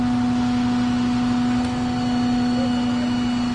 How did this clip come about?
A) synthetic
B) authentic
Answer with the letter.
B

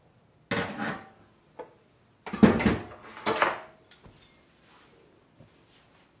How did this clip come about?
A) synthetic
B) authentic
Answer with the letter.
B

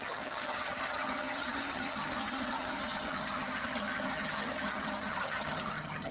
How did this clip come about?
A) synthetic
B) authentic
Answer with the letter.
A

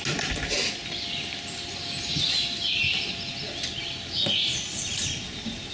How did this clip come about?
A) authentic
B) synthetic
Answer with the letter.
A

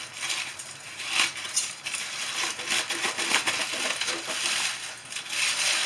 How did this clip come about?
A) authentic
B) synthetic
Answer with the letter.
A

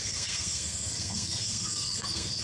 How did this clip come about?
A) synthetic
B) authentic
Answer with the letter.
A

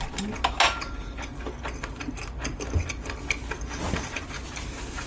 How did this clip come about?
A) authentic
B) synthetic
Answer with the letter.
A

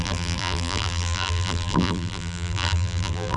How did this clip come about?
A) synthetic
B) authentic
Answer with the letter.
A